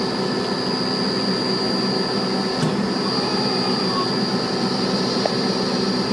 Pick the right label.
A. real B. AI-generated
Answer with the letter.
A